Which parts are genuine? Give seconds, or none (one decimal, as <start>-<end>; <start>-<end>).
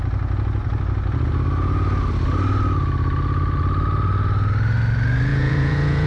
0.0-5.3